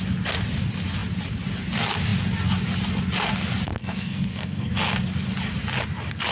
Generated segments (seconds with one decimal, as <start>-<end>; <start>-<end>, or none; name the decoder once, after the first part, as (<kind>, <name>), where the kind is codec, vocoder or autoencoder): 3.7-4.7 (codec, SNAC)